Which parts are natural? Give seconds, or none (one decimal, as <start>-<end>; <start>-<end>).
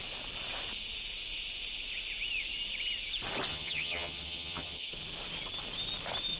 0.0-3.5; 4.9-6.4